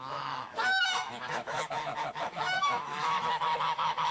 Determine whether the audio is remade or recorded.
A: remade